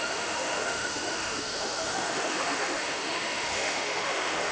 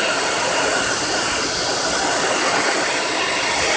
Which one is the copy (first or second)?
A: first